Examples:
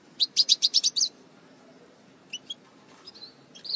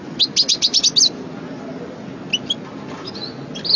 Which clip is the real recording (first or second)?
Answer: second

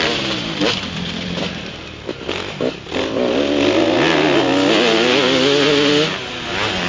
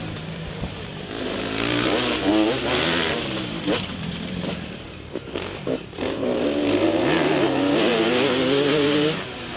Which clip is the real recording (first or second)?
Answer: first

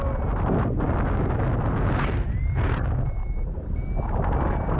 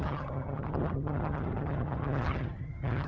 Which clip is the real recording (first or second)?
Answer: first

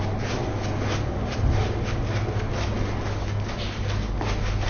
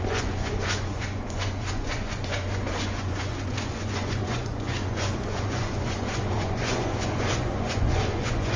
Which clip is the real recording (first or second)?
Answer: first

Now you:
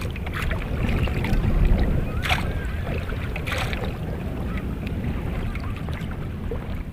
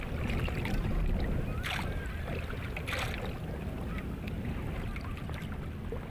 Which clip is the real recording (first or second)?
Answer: second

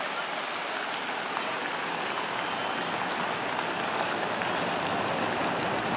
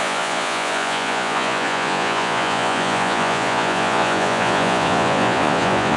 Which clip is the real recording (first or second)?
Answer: first